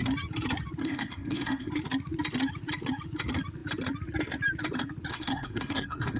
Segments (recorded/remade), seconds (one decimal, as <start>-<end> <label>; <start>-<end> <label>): 0.0-0.8 recorded; 0.8-1.7 remade; 1.7-5.1 recorded; 5.1-6.2 remade